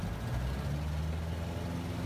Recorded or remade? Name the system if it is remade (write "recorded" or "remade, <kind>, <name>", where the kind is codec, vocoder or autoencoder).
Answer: recorded